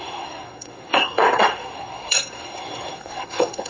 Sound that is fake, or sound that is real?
fake